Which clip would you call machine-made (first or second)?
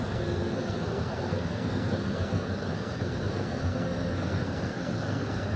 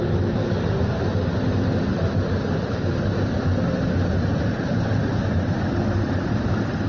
first